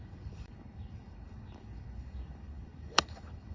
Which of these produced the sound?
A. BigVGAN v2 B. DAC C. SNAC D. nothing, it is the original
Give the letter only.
B